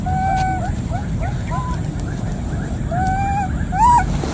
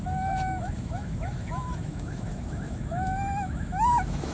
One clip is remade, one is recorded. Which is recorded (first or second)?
first